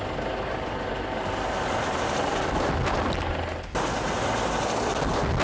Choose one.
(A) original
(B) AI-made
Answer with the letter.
A